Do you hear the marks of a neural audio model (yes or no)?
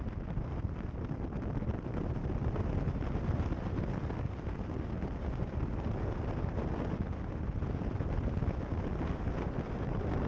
no